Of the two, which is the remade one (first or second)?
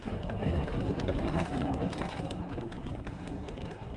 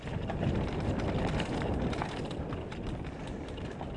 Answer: first